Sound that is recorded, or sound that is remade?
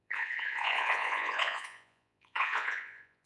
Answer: remade